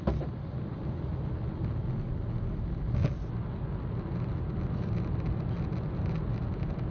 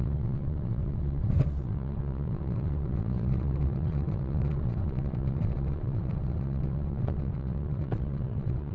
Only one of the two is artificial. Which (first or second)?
second